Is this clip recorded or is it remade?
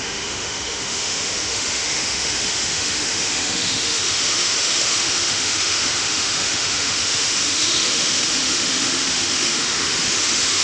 remade